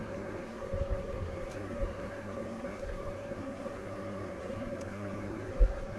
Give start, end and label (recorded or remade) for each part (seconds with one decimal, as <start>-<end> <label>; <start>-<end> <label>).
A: 0.0-6.0 remade